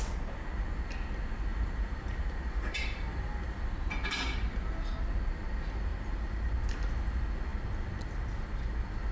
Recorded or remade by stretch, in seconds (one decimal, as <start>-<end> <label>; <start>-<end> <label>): 0.0-1.5 recorded; 1.5-3.9 remade; 3.9-5.9 recorded; 5.9-6.5 remade; 6.5-9.1 recorded